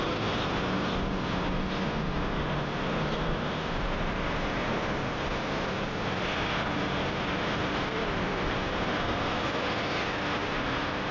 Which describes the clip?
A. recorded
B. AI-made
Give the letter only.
A